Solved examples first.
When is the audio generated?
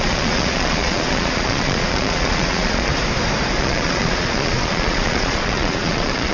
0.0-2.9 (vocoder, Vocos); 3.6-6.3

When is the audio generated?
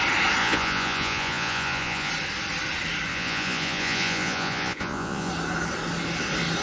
0.4-2.1 (vocoder, Vocos); 3.1-5.3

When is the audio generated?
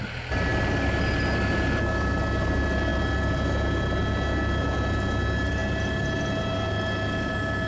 none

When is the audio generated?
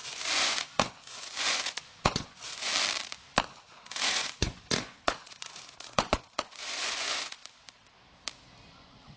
0.0-2.7 (vocoder, Vocos); 3.5-7.4; 8.7-9.2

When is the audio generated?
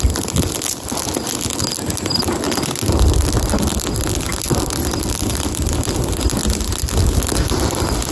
none